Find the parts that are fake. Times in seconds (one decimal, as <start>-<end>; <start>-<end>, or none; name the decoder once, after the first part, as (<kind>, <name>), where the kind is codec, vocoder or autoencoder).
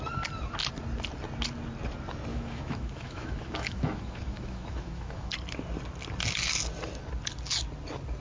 2.3-5.3 (autoencoder, DAC-VAE)